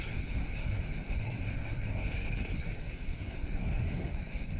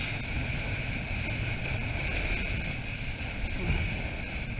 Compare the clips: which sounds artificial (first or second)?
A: first